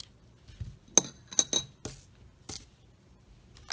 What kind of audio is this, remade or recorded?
recorded